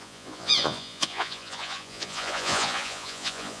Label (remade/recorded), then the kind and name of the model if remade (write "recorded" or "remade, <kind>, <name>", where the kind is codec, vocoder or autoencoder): remade, vocoder, Vocos